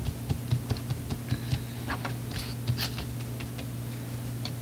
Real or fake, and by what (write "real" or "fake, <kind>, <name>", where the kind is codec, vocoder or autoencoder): real